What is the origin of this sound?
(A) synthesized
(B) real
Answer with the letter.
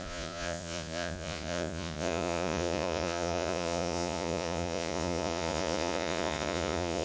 A